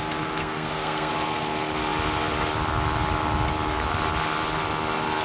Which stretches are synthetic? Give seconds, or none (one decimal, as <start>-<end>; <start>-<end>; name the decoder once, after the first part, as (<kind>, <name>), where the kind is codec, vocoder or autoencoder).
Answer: 0.4-1.1 (codec, SNAC)